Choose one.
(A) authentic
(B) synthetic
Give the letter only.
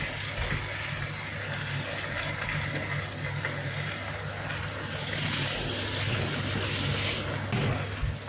A